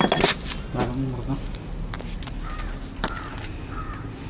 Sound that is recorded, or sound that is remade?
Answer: recorded